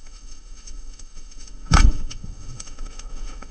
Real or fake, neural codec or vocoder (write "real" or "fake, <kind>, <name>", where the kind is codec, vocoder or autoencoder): fake, autoencoder, DAC-VAE